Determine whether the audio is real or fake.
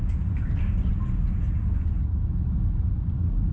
real